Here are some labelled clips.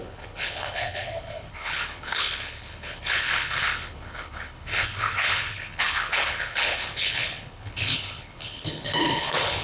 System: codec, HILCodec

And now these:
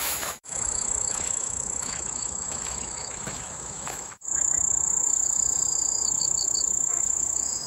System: autoencoder, DAC-VAE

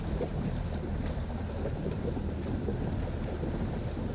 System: none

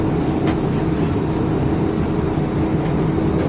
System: none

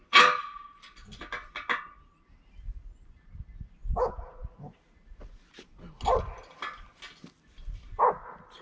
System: none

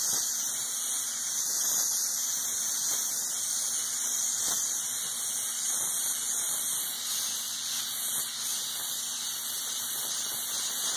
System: none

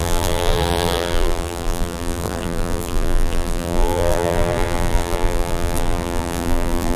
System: vocoder, BigVGAN v2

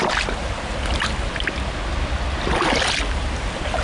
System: none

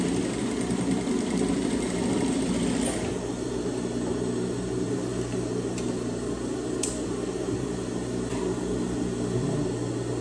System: none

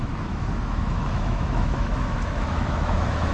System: autoencoder, DAC-VAE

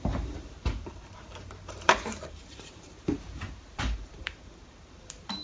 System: vocoder, BigVGAN v2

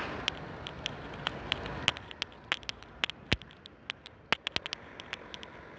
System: none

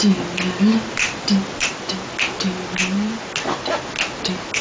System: none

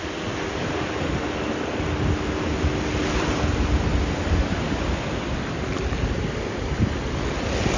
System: none